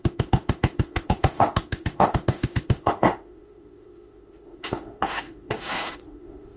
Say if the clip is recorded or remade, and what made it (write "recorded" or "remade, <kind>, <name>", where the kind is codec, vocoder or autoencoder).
remade, autoencoder, DAC-VAE